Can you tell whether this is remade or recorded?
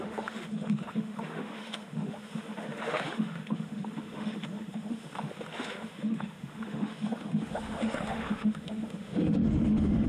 remade